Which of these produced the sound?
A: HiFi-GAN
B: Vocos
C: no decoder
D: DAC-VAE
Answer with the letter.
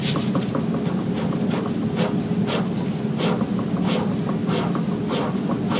C